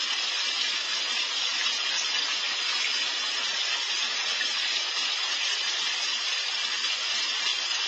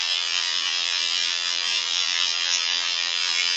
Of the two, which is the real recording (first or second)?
first